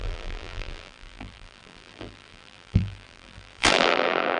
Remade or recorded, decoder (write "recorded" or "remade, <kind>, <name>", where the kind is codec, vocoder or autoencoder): remade, vocoder, BigVGAN v2